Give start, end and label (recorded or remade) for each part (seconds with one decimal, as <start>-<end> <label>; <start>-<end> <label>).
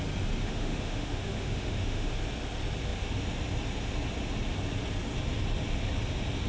0.0-0.4 recorded; 0.4-2.1 remade; 2.1-6.5 recorded